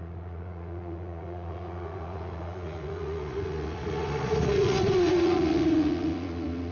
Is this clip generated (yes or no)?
yes